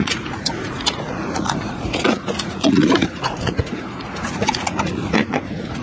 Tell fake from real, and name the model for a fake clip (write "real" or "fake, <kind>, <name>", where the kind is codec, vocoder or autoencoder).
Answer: fake, vocoder, Vocos